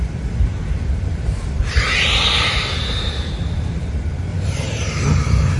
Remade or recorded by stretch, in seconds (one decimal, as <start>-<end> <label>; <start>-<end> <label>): 0.0-0.5 recorded; 0.5-3.9 remade; 3.9-4.3 recorded; 4.3-5.6 remade